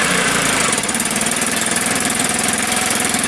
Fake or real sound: fake